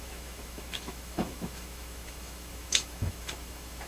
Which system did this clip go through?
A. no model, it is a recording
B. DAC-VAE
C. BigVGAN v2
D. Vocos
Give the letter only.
B